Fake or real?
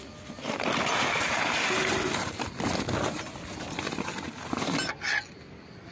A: real